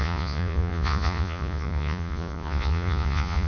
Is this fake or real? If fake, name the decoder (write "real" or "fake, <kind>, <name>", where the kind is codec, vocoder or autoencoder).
fake, vocoder, Vocos